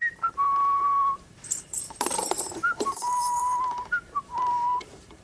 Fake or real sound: fake